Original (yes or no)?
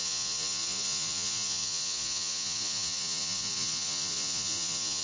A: no